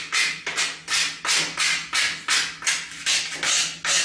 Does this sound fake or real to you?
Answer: real